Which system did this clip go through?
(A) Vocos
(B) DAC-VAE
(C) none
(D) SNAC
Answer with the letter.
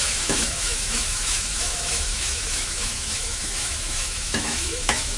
B